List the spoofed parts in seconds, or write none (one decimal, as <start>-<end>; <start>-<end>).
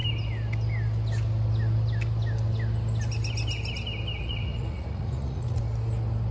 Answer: 4.2-5.6